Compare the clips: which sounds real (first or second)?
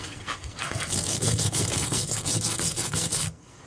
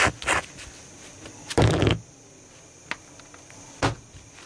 second